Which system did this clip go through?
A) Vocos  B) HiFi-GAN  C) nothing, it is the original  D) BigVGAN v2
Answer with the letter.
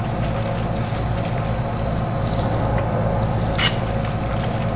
C